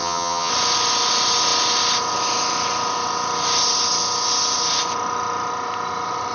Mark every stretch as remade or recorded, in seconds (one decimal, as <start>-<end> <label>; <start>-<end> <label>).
0.0-0.5 remade; 0.5-6.3 recorded